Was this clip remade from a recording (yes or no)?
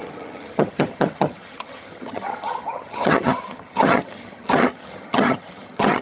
yes